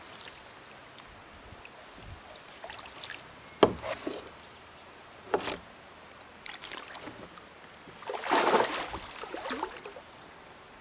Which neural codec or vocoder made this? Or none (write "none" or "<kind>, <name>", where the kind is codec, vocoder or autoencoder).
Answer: none